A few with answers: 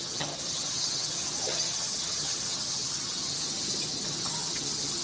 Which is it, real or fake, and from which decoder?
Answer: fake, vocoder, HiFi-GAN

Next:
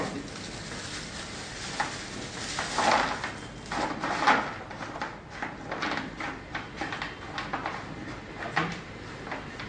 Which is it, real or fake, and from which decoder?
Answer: real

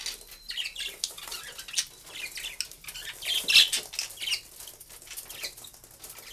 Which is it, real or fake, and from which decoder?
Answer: real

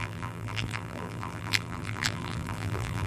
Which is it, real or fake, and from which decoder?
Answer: fake, vocoder, BigVGAN v2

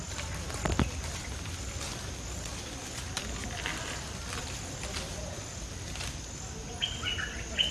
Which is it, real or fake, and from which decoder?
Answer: real